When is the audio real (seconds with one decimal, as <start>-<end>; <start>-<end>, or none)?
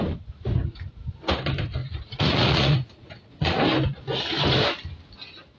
0.0-1.8; 3.6-5.6